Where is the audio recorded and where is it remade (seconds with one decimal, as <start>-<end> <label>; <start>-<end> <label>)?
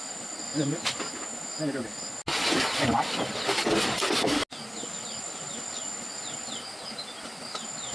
0.0-7.9 recorded